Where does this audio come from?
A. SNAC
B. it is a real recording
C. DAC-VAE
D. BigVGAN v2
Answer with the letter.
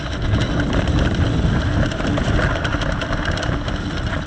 B